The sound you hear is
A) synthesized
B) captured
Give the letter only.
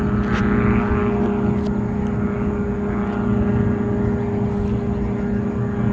B